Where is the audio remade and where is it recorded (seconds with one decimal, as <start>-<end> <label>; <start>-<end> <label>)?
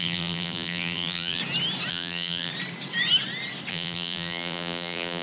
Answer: 0.0-1.4 remade; 1.4-1.9 recorded; 1.9-2.5 remade; 2.5-3.7 recorded; 3.7-5.2 remade